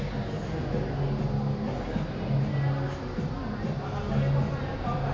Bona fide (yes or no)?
yes